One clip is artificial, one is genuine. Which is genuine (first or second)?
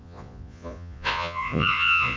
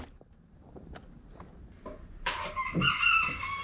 second